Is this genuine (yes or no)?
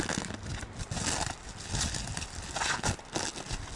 yes